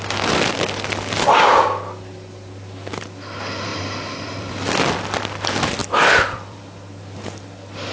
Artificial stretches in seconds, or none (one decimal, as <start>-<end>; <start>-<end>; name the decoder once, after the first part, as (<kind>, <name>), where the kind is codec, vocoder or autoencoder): 3.7-4.9 (vocoder, BigVGAN v2); 5.8-6.6